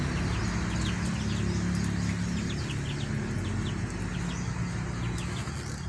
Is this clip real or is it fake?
real